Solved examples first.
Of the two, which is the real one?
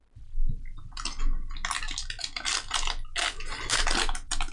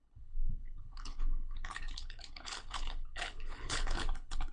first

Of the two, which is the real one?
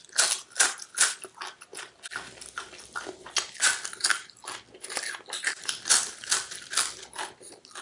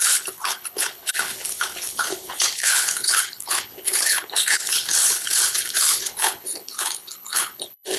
first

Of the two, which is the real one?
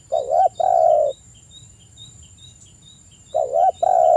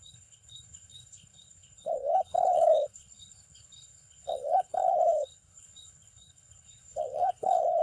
first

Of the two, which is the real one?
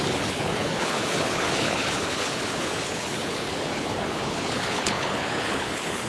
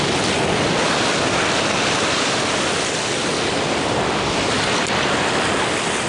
second